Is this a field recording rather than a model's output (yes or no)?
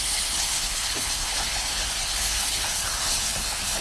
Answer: no